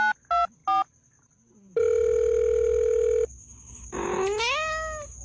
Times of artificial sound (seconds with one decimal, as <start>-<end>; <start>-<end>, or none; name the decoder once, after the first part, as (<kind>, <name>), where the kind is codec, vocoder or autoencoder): none